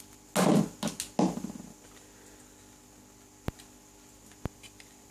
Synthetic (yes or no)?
no